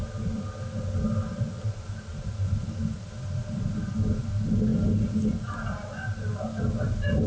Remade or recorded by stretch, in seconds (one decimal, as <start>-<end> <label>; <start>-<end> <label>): 0.0-7.3 recorded